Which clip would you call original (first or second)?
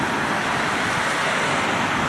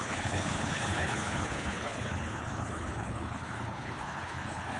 first